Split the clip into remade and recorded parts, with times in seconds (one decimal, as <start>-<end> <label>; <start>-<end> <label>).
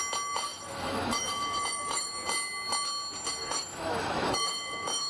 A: 0.0-0.5 recorded; 0.5-2.1 remade; 2.1-3.4 recorded; 3.4-5.1 remade